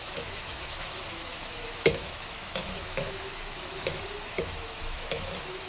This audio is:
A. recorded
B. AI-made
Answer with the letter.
B